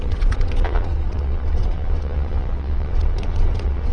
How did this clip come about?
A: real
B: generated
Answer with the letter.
B